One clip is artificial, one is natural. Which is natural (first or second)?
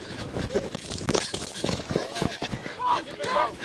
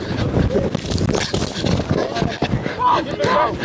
second